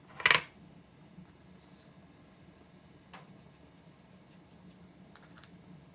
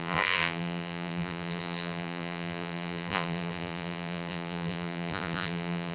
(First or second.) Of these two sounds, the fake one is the second